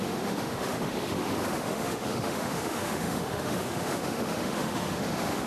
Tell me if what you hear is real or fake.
fake